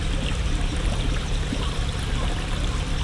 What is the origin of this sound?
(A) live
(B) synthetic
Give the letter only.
A